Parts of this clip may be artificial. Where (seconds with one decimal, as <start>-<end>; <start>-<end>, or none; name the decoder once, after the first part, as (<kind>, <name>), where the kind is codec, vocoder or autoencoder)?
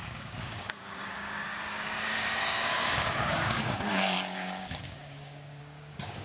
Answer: 0.0-6.2 (codec, DAC)